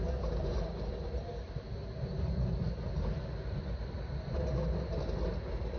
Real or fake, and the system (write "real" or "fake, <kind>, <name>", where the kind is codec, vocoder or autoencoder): real